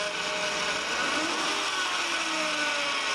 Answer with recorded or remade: recorded